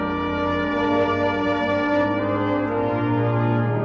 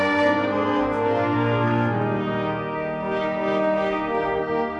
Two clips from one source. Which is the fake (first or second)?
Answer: second